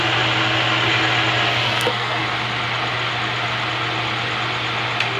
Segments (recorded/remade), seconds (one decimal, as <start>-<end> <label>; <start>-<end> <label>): 0.0-1.6 recorded; 1.6-2.2 remade; 2.2-5.2 recorded

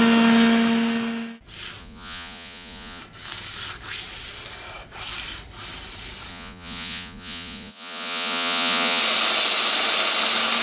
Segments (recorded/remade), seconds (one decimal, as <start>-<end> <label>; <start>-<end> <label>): 0.0-1.8 recorded; 1.8-3.0 remade; 3.0-6.3 recorded; 6.3-9.0 remade; 9.0-10.6 recorded